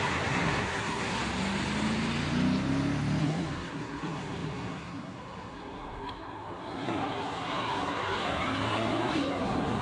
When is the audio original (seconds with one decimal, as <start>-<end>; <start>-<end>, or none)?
1.2-3.2